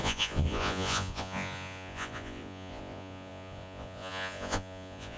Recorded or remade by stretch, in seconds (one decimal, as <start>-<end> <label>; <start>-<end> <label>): 0.0-5.2 remade